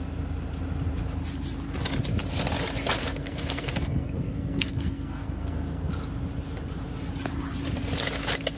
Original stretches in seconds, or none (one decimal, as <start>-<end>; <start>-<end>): 0.0-3.0; 5.9-8.6